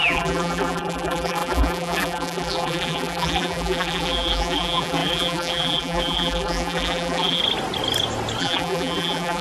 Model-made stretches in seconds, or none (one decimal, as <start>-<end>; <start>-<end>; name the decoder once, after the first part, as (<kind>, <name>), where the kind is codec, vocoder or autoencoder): 0.0-7.4 (vocoder, BigVGAN v2); 8.4-9.4